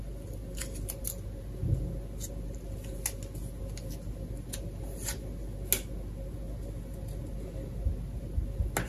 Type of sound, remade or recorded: recorded